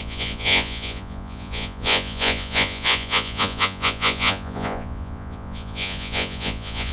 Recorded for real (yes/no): no